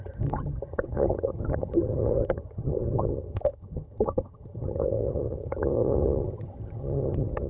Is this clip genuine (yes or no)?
no